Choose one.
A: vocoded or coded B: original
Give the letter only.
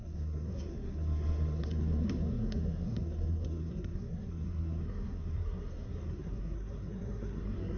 A